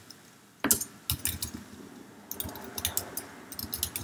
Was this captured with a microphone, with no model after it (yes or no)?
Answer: yes